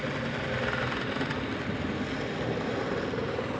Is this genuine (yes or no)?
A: yes